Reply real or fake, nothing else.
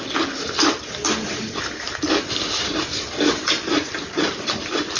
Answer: fake